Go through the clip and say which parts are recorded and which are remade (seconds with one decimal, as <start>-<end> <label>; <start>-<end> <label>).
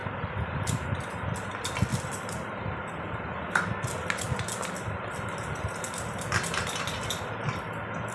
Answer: 0.0-1.9 recorded; 1.9-6.8 remade; 6.8-8.1 recorded